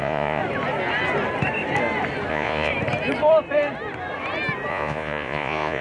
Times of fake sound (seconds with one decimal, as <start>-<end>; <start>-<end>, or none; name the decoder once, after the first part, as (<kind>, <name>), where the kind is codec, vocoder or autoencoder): 0.0-0.4 (vocoder, Vocos); 2.3-2.7; 4.7-5.8